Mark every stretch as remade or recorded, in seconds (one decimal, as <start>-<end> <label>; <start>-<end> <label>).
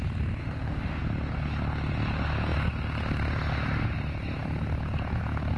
0.0-0.4 recorded; 0.4-1.0 remade; 1.0-5.6 recorded